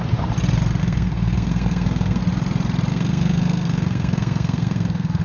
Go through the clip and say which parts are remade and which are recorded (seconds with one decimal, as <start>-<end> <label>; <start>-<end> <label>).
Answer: 0.0-0.8 recorded; 0.8-2.2 remade; 2.2-2.9 recorded; 2.9-5.2 remade